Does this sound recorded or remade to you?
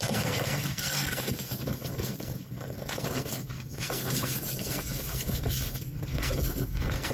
remade